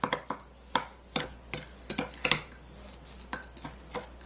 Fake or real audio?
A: real